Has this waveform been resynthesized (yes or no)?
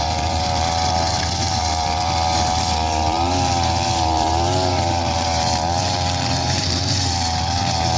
yes